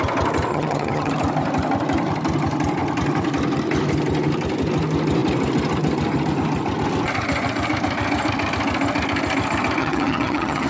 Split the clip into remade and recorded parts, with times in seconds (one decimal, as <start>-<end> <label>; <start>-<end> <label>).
0.0-0.5 recorded; 0.5-1.1 remade; 1.1-9.8 recorded; 9.8-10.7 remade